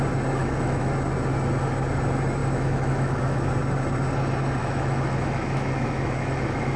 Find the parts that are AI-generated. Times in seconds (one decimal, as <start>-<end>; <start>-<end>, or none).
0.4-0.9; 2.4-3.5; 4.6-6.8

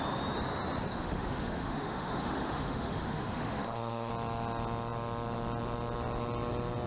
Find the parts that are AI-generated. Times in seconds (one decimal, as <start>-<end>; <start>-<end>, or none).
0.9-4.1

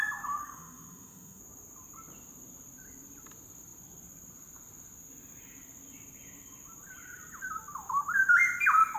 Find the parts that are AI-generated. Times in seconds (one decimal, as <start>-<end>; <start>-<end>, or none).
0.4-1.4